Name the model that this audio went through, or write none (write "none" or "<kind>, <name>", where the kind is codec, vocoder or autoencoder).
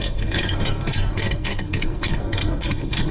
codec, SNAC